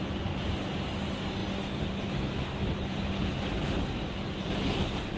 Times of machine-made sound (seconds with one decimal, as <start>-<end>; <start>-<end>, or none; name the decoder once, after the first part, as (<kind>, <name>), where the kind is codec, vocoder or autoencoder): none